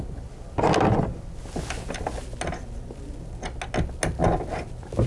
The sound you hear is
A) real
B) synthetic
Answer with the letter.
A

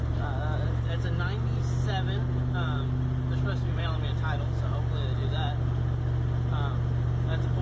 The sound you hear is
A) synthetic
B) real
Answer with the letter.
B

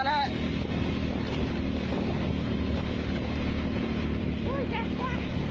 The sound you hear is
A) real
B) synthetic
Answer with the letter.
A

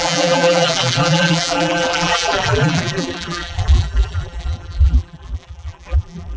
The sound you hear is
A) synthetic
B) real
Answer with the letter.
A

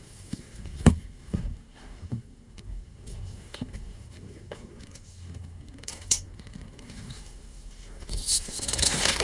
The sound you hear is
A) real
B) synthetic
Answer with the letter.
B